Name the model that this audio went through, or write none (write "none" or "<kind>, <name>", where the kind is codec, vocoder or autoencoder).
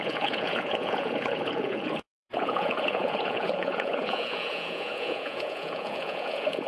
vocoder, Vocos